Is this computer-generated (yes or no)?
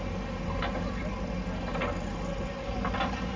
no